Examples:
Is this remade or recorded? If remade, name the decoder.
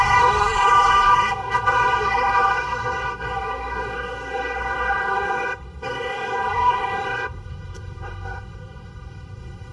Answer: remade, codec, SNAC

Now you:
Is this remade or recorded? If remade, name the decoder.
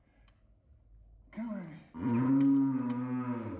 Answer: recorded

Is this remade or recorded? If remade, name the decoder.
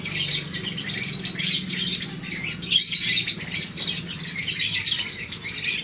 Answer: recorded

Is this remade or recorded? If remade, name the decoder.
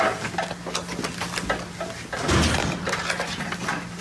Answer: recorded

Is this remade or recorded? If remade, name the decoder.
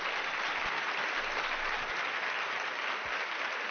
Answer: recorded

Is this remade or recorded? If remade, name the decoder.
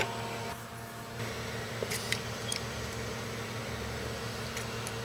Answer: recorded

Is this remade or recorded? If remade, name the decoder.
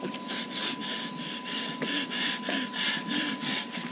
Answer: recorded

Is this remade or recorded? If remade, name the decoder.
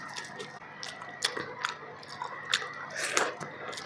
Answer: recorded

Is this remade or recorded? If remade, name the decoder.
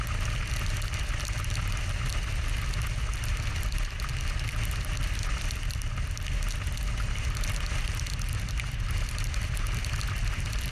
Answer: recorded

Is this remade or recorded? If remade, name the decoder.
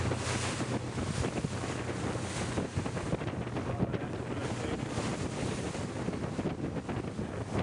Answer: recorded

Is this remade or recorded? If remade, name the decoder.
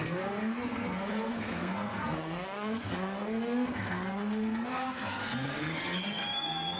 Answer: remade, codec, SNAC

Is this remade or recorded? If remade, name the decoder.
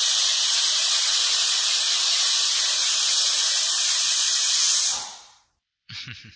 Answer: recorded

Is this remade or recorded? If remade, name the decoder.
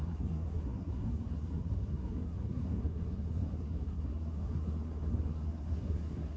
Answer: remade, codec, SNAC